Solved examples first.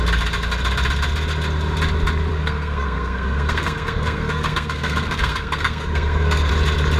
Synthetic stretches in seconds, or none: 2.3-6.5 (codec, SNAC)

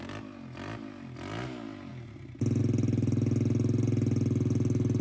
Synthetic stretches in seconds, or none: none

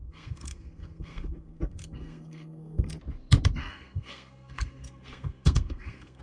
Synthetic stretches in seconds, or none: 0.0-2.9 (codec, SNAC); 3.6-6.2

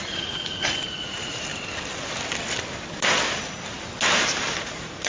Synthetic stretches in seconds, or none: 0.0-1.5 (vocoder, Vocos); 4.6-5.1

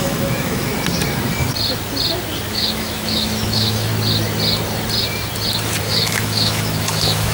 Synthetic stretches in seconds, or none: 0.0-0.7 (autoencoder, DAC-VAE); 2.5-3.9; 5.8-7.3

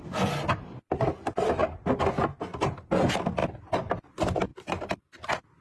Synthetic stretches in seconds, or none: 3.4-4.1 (vocoder, BigVGAN v2); 4.5-5.0

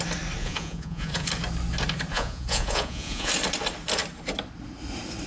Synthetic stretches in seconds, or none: 0.4-1.3 (vocoder, Vocos); 2.1-3.3